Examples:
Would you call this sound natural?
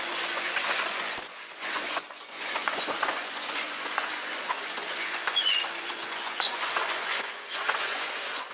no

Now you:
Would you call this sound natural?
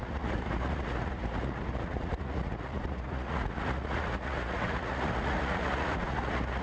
no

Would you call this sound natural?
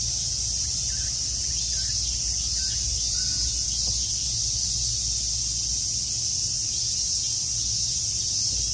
yes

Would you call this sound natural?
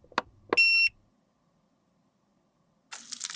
yes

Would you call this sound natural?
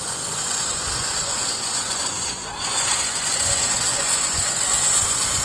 no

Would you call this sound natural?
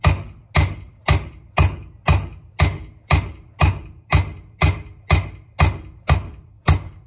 yes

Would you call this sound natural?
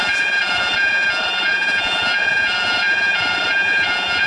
no